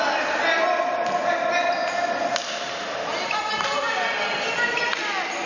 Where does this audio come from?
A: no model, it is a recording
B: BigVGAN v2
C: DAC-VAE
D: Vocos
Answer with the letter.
A